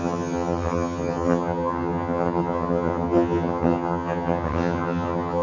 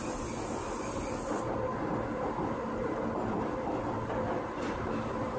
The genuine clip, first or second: second